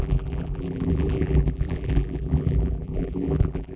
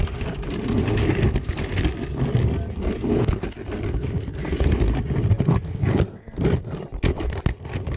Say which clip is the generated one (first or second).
first